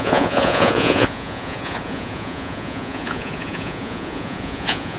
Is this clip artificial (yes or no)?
yes